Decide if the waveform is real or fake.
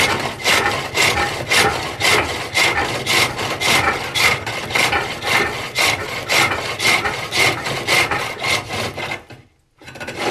real